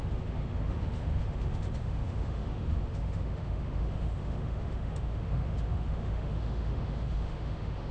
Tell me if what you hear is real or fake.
fake